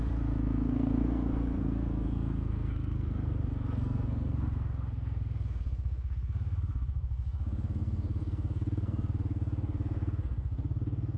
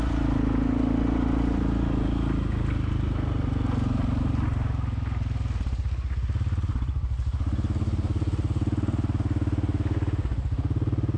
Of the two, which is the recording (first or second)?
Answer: second